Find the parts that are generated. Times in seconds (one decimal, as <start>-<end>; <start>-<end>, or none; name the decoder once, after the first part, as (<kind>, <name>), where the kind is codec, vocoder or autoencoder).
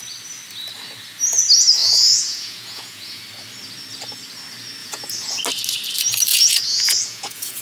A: 1.8-3.2 (vocoder, Vocos); 4.8-5.4; 6.3-7.6